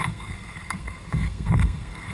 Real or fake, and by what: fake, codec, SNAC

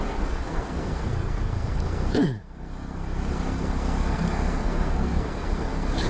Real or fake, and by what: fake, codec, SNAC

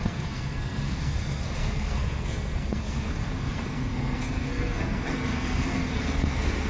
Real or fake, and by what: fake, codec, SNAC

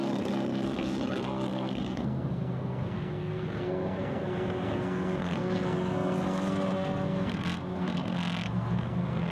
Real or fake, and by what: fake, codec, SNAC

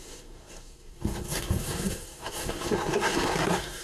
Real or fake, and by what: fake, codec, SNAC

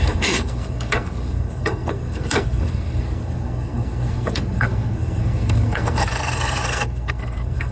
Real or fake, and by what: fake, codec, SNAC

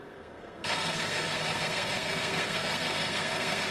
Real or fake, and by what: fake, codec, SNAC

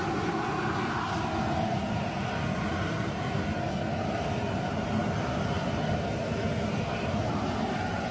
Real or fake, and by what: real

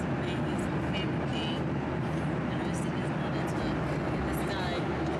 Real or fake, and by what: real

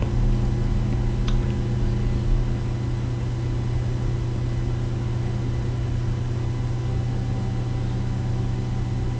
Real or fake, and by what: real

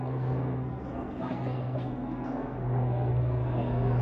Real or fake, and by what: fake, codec, SNAC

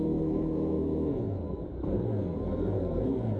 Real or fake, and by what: fake, codec, SNAC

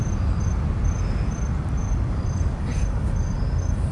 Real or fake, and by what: real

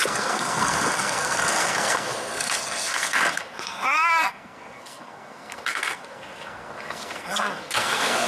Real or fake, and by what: fake, codec, SNAC